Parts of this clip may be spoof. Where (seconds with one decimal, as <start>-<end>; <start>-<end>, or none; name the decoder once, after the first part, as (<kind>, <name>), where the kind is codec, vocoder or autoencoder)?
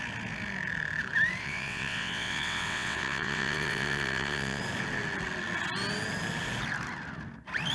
1.4-4.6 (vocoder, WaveNeXt)